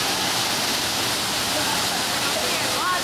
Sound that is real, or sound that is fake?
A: real